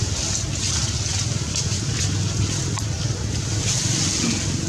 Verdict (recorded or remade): recorded